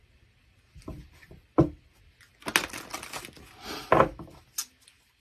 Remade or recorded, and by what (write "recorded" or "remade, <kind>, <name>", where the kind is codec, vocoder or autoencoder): recorded